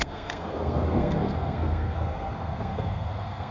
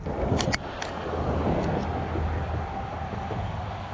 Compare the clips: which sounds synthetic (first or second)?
first